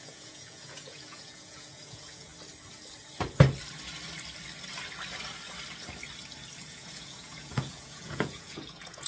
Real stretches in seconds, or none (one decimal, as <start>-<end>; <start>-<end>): 2.3-6.7